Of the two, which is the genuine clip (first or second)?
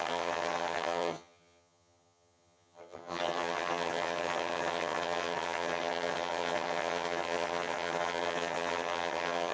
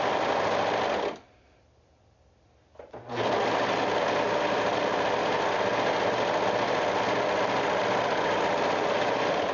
second